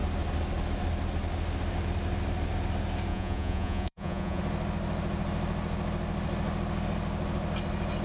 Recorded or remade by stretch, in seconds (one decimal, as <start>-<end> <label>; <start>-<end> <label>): 0.0-3.1 recorded; 3.1-4.4 remade; 4.4-8.0 recorded